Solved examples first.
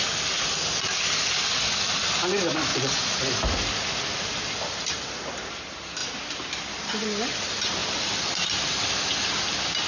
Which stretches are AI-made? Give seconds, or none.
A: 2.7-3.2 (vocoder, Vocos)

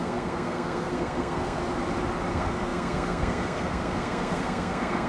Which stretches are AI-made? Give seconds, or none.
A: 0.0-1.6 (codec, SNAC); 2.3-5.1